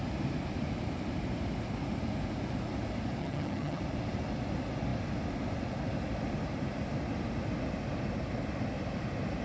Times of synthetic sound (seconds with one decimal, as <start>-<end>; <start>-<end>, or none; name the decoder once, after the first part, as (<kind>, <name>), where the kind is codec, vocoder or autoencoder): 3.2-3.8 (vocoder, HiFi-GAN)